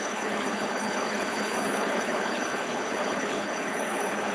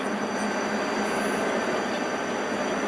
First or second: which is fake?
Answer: first